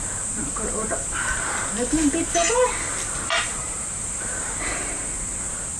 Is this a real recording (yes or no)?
no